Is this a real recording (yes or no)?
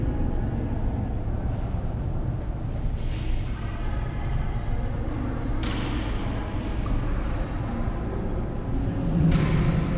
yes